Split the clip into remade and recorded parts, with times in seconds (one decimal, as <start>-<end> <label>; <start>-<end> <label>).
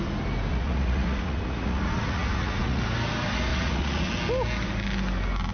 0.0-0.5 recorded; 0.5-2.8 remade; 2.8-3.5 recorded; 3.5-4.1 remade; 4.1-5.5 recorded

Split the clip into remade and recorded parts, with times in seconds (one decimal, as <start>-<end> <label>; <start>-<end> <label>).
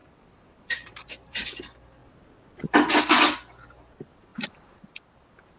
0.0-1.6 remade; 1.6-4.3 recorded; 4.3-4.8 remade; 4.8-5.6 recorded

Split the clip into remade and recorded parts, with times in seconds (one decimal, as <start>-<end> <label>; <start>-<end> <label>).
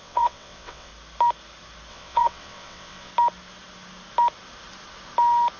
0.0-0.9 remade; 0.9-1.9 recorded; 1.9-3.1 remade; 3.1-5.6 recorded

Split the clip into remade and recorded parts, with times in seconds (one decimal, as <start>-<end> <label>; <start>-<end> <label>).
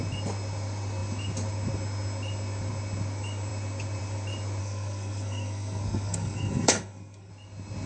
0.0-4.6 recorded; 4.6-7.3 remade; 7.3-7.9 recorded